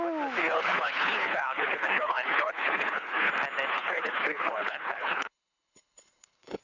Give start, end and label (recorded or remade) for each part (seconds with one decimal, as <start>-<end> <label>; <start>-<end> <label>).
0.0-0.4 recorded; 0.4-3.3 remade; 3.3-3.7 recorded; 3.7-6.6 remade